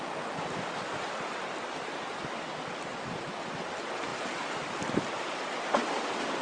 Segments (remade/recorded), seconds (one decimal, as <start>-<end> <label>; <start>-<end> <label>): 0.0-6.4 recorded